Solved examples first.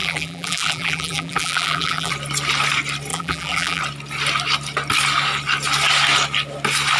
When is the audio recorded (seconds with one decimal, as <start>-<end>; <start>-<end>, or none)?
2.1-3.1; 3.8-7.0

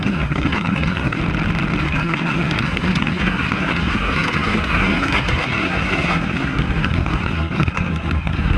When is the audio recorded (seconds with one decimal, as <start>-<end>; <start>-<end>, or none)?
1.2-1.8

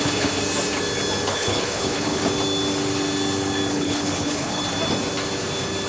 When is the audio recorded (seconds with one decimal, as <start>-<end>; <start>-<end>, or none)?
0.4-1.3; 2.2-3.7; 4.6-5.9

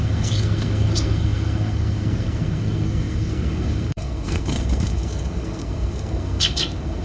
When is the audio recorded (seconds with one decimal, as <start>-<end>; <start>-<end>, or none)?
none

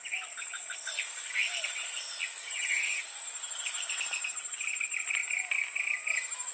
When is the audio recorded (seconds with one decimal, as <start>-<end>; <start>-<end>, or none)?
0.0-2.4; 3.0-6.5